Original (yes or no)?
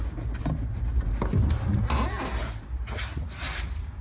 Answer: yes